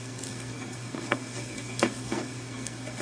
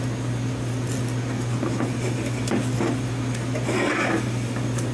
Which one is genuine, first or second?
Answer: second